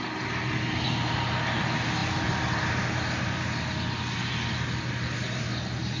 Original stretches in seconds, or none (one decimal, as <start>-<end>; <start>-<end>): 0.0-6.0